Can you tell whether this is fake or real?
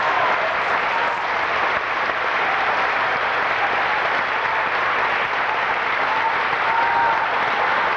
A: real